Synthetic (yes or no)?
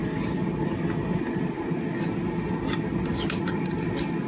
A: no